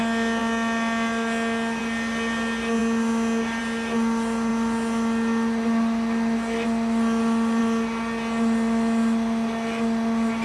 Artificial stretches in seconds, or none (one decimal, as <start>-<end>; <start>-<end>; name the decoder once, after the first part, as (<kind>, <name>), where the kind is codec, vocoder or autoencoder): none